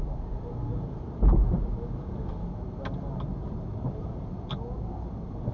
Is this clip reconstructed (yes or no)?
no